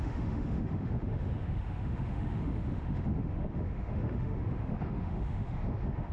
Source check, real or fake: fake